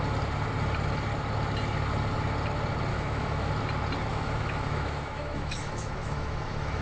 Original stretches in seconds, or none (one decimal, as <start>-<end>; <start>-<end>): 0.0-2.9; 3.5-4.1